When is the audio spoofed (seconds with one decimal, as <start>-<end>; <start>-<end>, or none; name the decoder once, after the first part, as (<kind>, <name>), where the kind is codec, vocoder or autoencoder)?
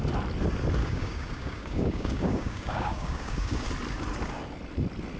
0.8-3.7 (codec, DAC)